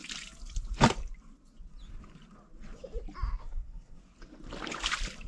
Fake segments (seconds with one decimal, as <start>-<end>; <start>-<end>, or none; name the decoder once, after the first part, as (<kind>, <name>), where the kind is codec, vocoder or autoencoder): 3.4-4.0 (codec, SNAC)